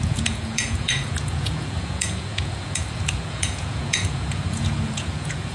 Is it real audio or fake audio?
fake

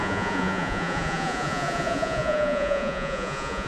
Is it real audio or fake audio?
fake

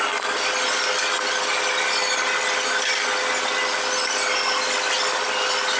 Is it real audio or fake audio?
real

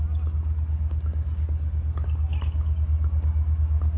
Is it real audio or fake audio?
real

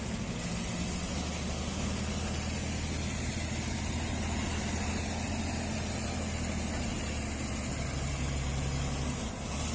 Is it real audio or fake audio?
real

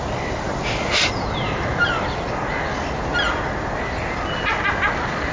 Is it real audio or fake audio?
real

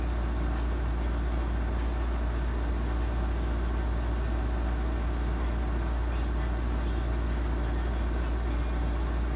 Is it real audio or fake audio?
real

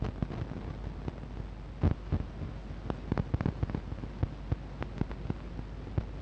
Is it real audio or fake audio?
real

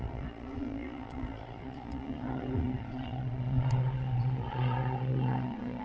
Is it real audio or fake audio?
fake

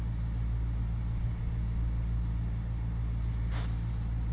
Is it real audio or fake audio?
real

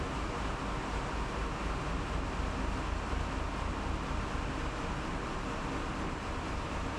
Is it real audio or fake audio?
real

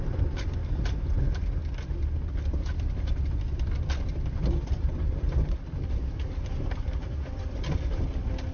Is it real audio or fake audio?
real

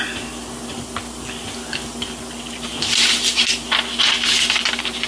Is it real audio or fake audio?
real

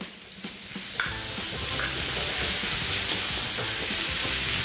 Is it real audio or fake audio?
real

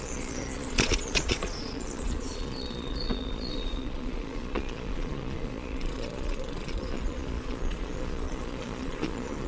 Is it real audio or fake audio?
fake